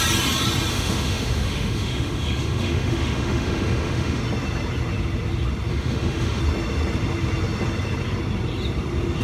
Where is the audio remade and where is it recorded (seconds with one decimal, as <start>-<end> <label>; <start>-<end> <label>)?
0.0-0.7 recorded; 0.7-4.2 remade; 4.2-5.7 recorded; 5.7-6.4 remade; 6.4-9.2 recorded